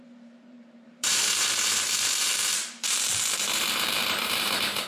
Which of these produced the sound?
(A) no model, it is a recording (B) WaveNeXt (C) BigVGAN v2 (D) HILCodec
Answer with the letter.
C